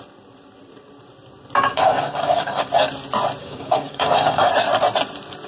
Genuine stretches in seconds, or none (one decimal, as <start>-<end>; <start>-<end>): 0.0-1.7; 2.7-3.4; 4.5-5.5